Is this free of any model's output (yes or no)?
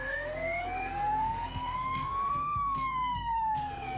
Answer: no